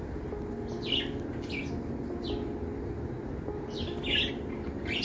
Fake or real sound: real